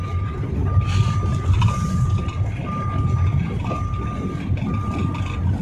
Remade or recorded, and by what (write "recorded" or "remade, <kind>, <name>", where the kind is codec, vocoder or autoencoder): recorded